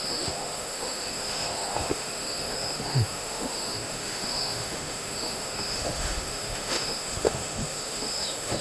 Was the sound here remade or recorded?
remade